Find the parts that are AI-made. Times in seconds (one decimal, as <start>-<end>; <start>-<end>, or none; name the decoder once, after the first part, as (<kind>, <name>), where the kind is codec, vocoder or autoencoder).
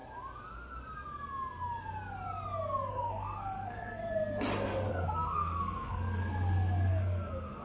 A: 2.9-4.0 (codec, SNAC); 4.9-6.2; 6.9-7.6